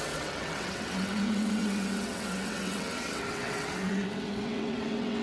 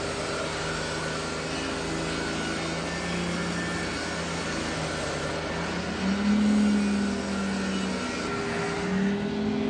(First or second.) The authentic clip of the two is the second